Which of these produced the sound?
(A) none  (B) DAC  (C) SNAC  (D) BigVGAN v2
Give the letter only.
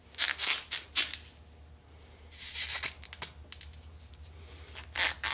A